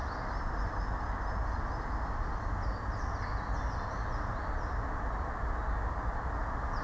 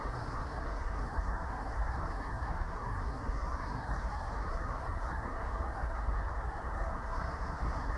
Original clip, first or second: first